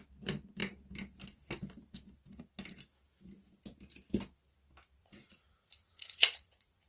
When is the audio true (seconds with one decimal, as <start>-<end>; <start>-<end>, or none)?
0.0-5.0